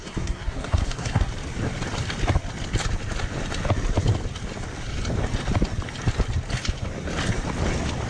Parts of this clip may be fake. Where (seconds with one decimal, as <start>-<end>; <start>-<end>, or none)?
0.0-1.3